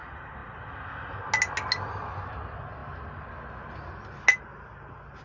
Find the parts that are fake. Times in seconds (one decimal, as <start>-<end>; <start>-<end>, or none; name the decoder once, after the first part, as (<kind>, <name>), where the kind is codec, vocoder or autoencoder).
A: none